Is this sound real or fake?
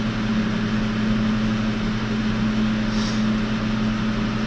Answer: real